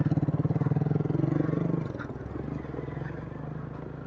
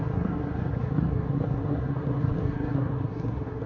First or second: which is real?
first